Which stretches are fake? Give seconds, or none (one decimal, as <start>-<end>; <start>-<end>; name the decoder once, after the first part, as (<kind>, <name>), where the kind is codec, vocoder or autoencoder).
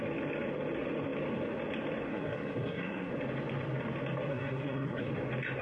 2.1-3.1 (codec, SNAC); 4.3-5.1